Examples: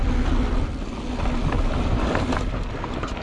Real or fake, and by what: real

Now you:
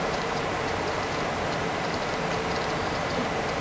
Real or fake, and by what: fake, vocoder, BigVGAN v2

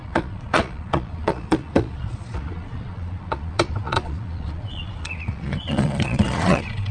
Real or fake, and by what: fake, vocoder, Vocos